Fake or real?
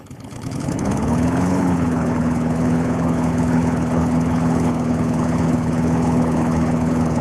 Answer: fake